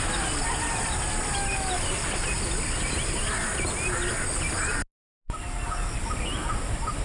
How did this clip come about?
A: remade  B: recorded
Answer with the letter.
B